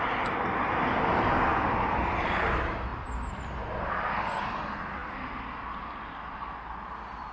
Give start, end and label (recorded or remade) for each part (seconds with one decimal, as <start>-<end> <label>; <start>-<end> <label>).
0.0-7.3 recorded

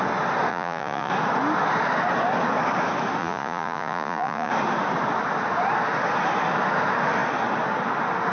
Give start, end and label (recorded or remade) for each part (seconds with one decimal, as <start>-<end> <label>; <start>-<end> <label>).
0.0-0.5 recorded; 0.5-1.1 remade; 1.1-3.2 recorded; 3.2-4.5 remade; 4.5-8.3 recorded

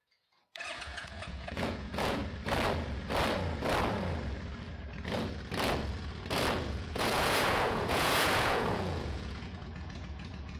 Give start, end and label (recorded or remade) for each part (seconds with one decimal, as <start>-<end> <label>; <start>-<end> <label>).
0.0-2.2 remade; 2.2-6.7 recorded; 6.7-10.6 remade

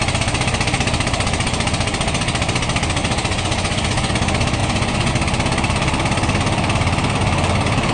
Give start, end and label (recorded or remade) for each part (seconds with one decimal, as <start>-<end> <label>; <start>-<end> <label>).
0.0-3.0 recorded; 3.0-4.1 remade; 4.1-4.6 recorded; 4.6-5.1 remade; 5.1-7.9 recorded

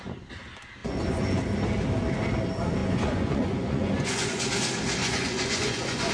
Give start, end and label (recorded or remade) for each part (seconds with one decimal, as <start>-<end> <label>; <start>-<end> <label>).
0.0-0.8 recorded; 0.8-1.4 remade; 1.4-2.8 recorded; 2.8-4.4 remade; 4.4-5.0 recorded; 5.0-6.1 remade

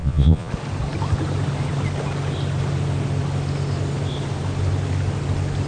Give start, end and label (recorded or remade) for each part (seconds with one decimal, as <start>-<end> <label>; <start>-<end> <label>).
0.0-0.5 remade; 0.5-5.7 recorded